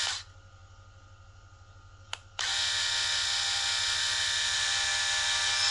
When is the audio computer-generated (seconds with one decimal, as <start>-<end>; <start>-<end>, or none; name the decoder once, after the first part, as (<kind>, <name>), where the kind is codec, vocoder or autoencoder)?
none